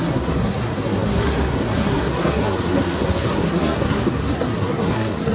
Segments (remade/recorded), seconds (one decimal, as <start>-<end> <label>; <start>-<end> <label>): 0.0-5.3 remade